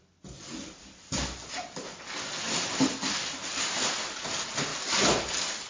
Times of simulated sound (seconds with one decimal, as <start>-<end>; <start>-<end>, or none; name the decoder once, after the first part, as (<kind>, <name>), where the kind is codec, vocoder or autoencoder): none